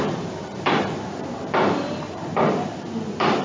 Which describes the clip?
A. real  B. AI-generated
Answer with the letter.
B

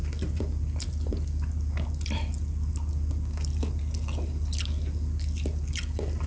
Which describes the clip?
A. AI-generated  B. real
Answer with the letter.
B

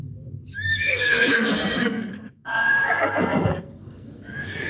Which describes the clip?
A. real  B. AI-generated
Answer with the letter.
B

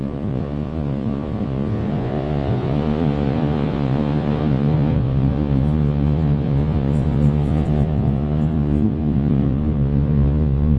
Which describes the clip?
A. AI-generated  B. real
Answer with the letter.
A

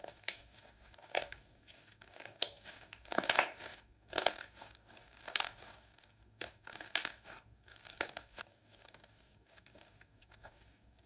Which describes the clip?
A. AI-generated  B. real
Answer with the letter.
A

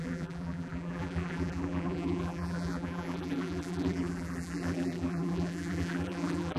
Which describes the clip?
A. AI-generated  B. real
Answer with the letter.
A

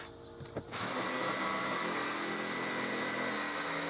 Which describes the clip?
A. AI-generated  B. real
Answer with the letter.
B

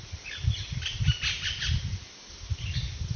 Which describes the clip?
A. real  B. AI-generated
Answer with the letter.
A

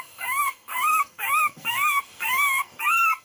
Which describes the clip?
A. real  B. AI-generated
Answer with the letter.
B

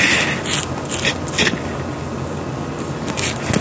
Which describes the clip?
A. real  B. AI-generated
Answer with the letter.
A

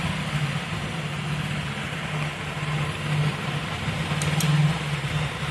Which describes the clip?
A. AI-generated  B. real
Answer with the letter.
B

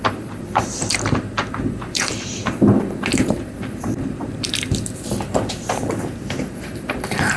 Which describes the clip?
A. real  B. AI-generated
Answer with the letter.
B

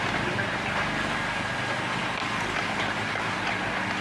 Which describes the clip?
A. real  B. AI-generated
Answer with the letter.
A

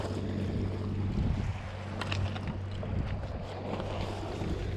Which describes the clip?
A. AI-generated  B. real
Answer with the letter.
B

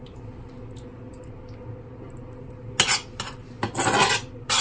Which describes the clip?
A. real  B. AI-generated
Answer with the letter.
A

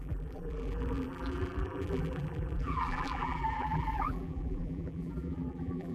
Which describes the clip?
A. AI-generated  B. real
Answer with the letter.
A